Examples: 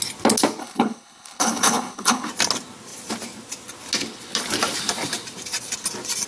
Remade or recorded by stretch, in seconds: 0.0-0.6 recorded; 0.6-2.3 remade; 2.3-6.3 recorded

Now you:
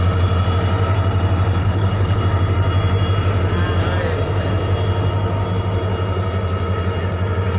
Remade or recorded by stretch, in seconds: 0.0-1.6 recorded; 1.6-2.2 remade; 2.2-7.6 recorded

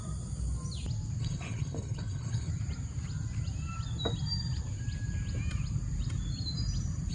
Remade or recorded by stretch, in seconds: 0.0-1.2 recorded; 1.2-2.5 remade; 2.5-7.1 recorded

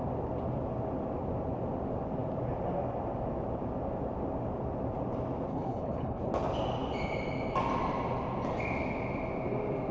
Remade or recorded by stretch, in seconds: 0.0-5.5 recorded; 5.5-6.3 remade; 6.3-9.9 recorded